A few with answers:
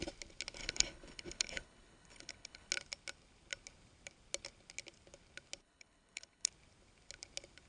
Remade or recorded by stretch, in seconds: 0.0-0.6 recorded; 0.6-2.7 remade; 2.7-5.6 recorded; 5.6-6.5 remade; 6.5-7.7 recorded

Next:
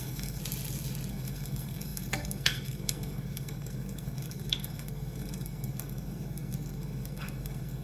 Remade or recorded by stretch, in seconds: 0.0-0.4 remade; 0.4-1.1 recorded; 1.1-7.8 remade

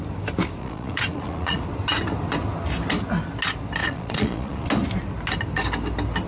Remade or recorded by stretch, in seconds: 0.0-0.6 recorded; 0.6-1.6 remade; 1.6-3.8 recorded; 3.8-4.7 remade; 4.7-6.3 recorded

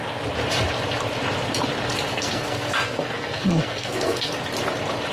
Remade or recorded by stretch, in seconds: 0.0-2.1 recorded; 2.1-4.3 remade; 4.3-5.1 recorded

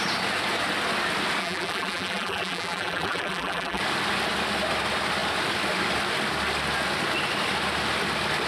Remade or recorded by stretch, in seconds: 0.0-1.4 recorded; 1.4-3.8 remade; 3.8-8.5 recorded

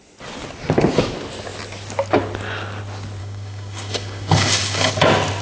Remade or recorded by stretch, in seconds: 0.0-3.2 recorded; 3.2-4.9 remade; 4.9-5.4 recorded